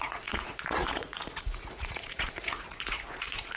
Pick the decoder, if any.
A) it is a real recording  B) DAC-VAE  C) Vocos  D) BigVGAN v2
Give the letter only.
C